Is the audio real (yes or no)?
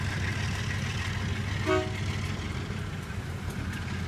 yes